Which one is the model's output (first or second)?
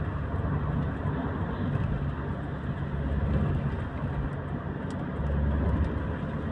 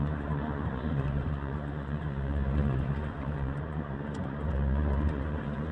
second